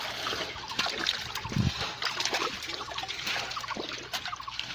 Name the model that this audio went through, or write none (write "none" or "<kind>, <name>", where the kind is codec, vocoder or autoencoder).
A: none